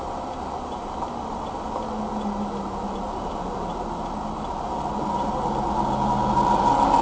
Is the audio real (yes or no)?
yes